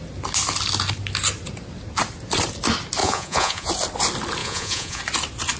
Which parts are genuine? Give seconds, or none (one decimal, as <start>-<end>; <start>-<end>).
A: 0.0-3.0; 3.7-4.4; 5.0-5.6